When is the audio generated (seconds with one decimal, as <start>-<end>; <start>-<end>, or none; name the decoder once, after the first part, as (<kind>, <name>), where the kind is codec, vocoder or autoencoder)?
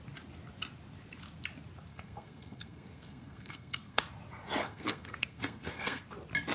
1.9-4.0 (codec, SNAC); 4.6-6.0